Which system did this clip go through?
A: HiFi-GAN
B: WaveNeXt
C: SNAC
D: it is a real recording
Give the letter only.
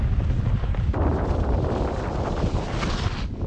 D